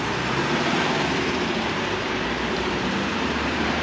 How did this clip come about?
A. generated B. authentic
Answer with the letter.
A